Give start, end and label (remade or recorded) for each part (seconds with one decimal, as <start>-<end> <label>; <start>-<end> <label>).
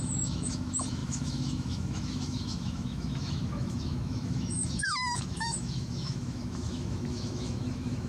0.0-8.1 remade